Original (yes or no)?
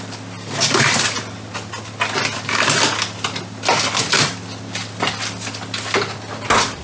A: yes